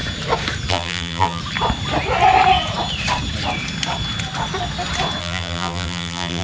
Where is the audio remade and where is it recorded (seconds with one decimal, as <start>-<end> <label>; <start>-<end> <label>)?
0.0-0.7 recorded; 0.7-1.4 remade; 1.4-5.2 recorded; 5.2-6.4 remade